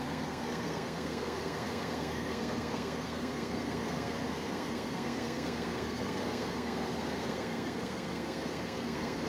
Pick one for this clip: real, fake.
fake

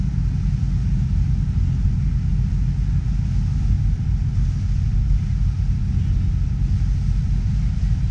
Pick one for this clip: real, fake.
real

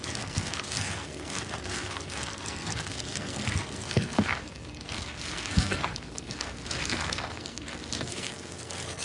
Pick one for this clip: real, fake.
fake